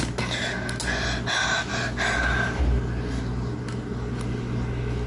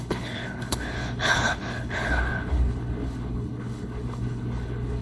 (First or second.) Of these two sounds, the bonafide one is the first